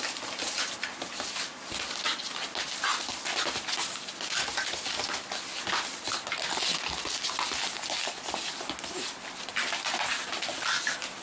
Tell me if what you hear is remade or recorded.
recorded